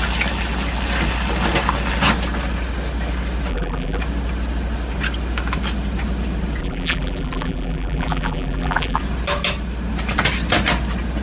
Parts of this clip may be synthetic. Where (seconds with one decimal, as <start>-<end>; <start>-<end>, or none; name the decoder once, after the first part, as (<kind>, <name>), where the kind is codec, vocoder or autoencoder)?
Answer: 3.5-4.0 (vocoder, BigVGAN v2); 6.6-9.0